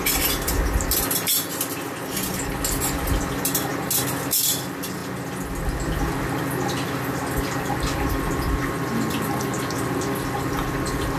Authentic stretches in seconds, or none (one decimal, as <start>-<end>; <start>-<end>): 0.0-11.2

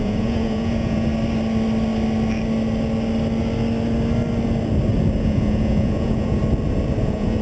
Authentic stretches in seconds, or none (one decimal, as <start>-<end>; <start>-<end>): 1.1-5.2; 6.4-7.0

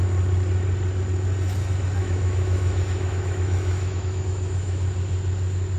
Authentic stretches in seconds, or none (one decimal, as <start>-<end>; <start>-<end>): 0.0-2.0; 4.8-5.8

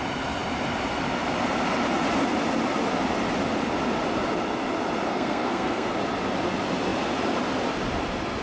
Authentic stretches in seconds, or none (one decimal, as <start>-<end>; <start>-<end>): 0.0-5.1; 5.9-8.4

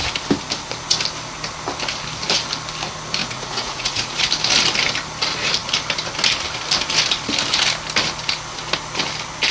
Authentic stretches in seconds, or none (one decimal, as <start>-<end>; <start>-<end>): 0.0-3.2; 4.3-9.5

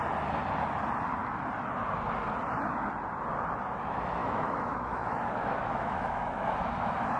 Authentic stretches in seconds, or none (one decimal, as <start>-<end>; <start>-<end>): 0.0-4.2; 6.5-7.2

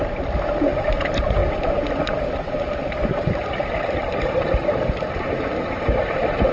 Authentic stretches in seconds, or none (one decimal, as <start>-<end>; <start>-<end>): 0.0-6.5

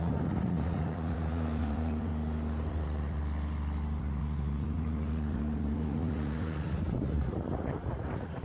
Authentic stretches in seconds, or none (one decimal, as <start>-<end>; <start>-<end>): 2.1-2.7; 3.2-4.0